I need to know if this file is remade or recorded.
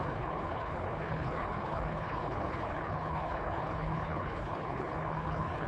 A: remade